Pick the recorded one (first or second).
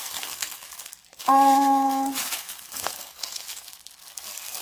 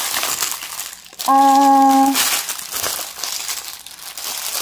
second